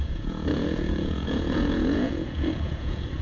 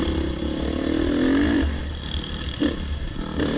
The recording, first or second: second